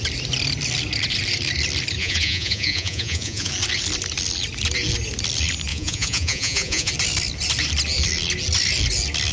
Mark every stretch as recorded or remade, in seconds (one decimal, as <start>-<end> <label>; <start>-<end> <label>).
0.0-2.0 recorded; 2.0-3.5 remade; 3.5-5.7 recorded; 5.7-6.9 remade; 6.9-9.3 recorded